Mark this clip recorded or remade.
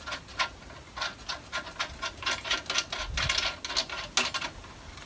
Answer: recorded